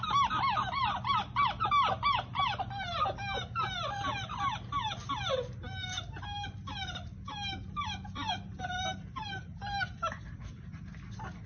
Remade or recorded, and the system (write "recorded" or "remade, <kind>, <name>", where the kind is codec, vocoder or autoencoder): recorded